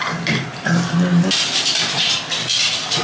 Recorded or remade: recorded